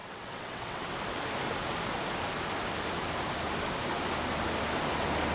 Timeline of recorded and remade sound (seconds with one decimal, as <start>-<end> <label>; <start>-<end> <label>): 0.0-0.9 remade; 0.9-5.3 recorded